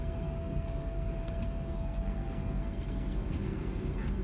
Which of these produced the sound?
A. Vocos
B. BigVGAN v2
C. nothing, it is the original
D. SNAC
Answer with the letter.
D